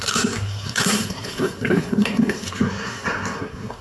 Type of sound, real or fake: fake